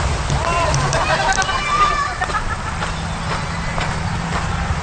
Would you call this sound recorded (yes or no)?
yes